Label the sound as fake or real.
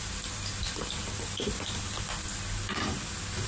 real